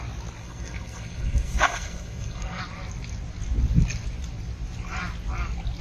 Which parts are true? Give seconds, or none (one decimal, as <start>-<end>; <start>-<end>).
0.0-0.4; 2.6-5.8